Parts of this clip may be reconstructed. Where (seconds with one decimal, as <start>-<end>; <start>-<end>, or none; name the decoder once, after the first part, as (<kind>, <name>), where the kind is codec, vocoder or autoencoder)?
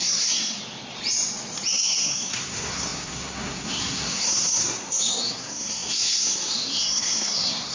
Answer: 0.0-0.6 (codec, SNAC); 1.7-7.7